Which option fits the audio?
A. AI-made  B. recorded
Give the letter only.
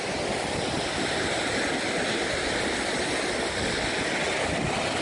B